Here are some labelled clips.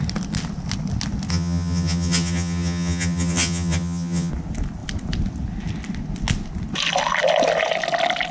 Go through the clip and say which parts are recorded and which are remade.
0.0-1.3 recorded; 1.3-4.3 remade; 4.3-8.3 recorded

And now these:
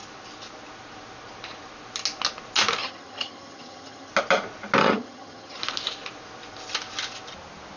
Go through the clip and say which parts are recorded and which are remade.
0.0-2.8 recorded; 2.8-4.1 remade; 4.1-4.8 recorded; 4.8-5.6 remade; 5.6-7.8 recorded

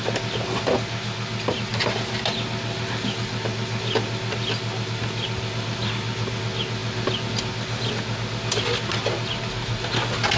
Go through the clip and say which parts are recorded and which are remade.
0.0-10.4 recorded

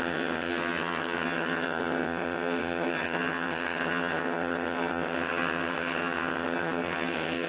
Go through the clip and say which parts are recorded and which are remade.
0.0-7.5 remade

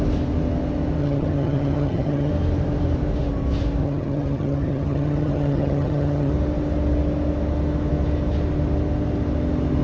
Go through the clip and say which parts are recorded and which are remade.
0.0-1.0 recorded; 1.0-2.3 remade; 2.3-3.8 recorded; 3.8-6.3 remade; 6.3-9.8 recorded